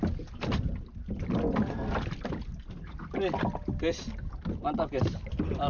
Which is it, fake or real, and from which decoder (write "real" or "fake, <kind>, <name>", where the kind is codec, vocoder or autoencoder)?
real